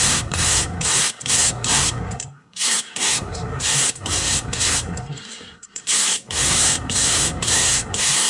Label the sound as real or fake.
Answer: fake